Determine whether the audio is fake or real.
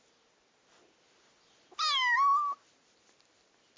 real